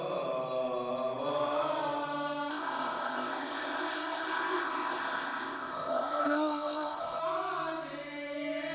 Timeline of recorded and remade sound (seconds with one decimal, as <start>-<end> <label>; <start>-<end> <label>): 0.0-2.5 recorded; 2.5-7.2 remade; 7.2-8.7 recorded